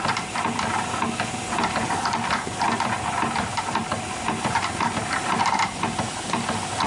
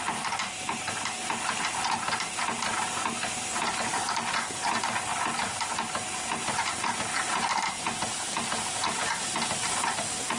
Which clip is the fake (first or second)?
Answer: first